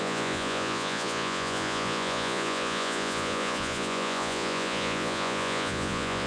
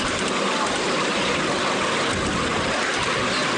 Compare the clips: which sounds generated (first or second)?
first